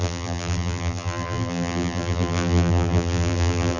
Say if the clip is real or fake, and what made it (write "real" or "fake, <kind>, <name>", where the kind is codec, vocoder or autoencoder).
fake, vocoder, BigVGAN v2